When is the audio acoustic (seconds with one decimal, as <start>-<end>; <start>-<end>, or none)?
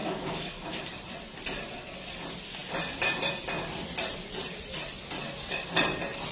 0.8-6.3